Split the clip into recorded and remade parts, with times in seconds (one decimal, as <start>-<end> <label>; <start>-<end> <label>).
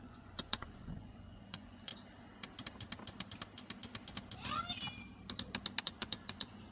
0.0-1.9 remade; 1.9-5.8 recorded; 5.8-6.7 remade